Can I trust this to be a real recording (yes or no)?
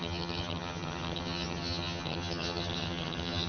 no